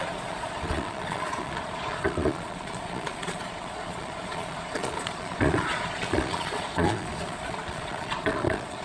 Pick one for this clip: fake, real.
fake